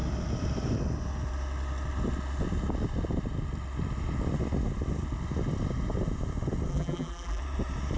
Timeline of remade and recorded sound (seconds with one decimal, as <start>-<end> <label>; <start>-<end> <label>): 0.0-6.7 recorded; 6.7-7.4 remade; 7.4-8.0 recorded